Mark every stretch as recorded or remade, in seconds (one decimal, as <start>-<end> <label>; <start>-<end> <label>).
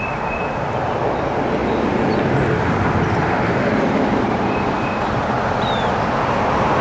0.0-6.8 remade